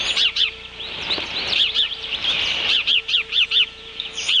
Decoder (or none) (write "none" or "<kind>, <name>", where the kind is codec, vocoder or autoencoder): vocoder, BigVGAN v2